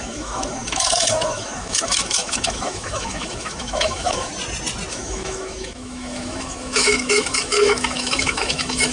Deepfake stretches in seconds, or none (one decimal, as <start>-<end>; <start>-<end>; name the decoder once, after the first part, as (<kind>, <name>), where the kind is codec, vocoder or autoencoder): 0.0-4.3 (autoencoder, DAC-VAE); 4.9-8.9